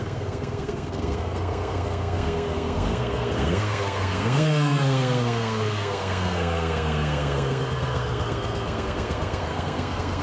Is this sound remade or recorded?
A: remade